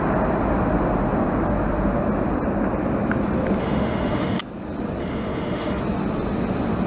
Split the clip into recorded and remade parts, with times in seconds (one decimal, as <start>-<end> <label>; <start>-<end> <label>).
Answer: 0.0-3.6 recorded; 3.6-4.4 remade; 4.4-5.0 recorded; 5.0-5.8 remade; 5.8-6.9 recorded